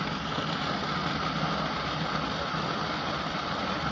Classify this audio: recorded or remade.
recorded